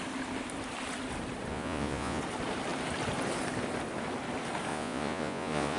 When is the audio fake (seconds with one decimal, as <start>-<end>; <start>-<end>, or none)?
1.5-2.2; 4.7-5.8